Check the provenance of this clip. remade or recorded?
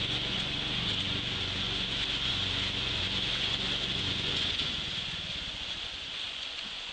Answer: remade